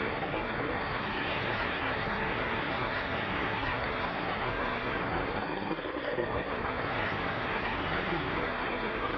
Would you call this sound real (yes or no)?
no